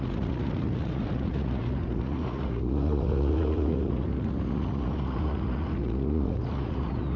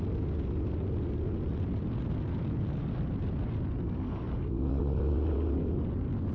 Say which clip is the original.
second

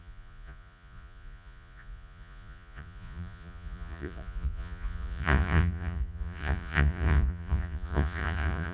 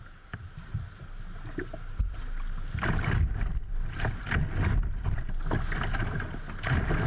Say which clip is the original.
second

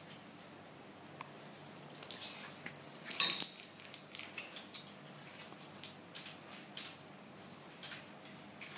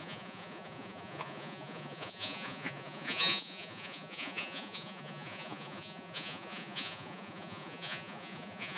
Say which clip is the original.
first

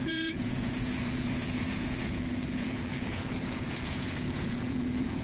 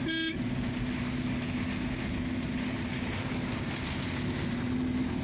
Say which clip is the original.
second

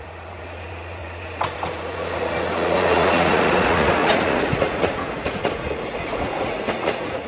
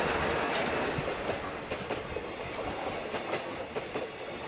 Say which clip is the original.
second